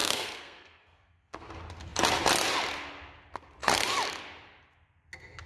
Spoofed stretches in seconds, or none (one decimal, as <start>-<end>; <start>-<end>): 0.0-1.5